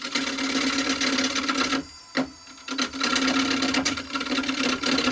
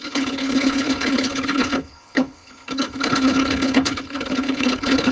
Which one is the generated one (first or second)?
second